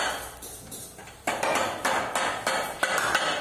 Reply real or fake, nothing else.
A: real